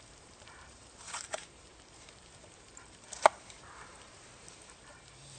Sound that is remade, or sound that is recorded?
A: remade